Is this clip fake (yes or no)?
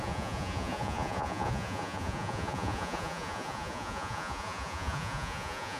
yes